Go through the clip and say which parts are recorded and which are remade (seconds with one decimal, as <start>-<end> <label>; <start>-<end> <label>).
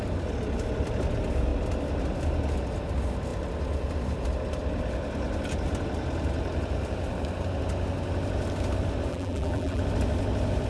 0.0-9.1 recorded; 9.1-9.8 remade; 9.8-10.7 recorded